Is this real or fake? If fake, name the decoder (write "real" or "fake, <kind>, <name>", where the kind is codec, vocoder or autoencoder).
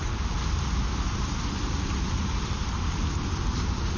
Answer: real